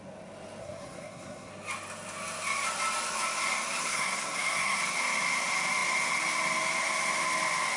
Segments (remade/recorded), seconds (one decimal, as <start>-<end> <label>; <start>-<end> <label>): 0.0-0.6 recorded; 0.6-1.5 remade; 1.5-3.8 recorded; 3.8-4.8 remade; 4.8-7.8 recorded

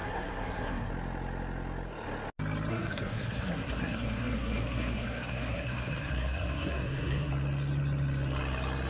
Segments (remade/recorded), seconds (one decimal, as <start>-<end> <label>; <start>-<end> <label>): 0.0-0.9 remade; 0.9-2.7 recorded; 2.7-7.3 remade; 7.3-8.9 recorded

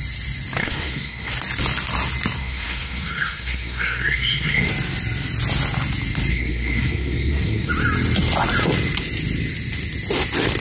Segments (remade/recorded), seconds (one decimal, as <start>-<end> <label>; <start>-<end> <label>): 0.0-0.6 recorded; 0.6-1.3 remade; 1.3-2.4 recorded; 2.4-4.7 remade; 4.7-6.3 recorded; 6.3-7.7 remade; 7.7-10.6 recorded

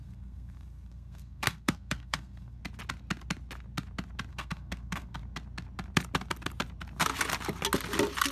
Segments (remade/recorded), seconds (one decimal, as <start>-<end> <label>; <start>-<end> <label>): 0.0-2.6 remade; 2.6-4.3 recorded; 4.3-5.2 remade; 5.2-8.3 recorded